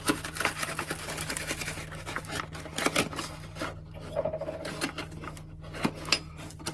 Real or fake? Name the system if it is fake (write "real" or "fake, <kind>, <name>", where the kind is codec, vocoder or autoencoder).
real